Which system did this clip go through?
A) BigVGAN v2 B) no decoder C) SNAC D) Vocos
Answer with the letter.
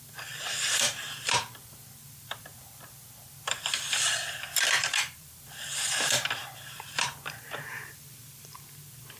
A